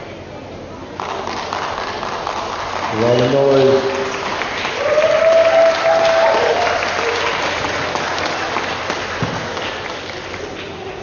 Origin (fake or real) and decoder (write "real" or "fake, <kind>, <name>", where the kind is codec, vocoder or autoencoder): real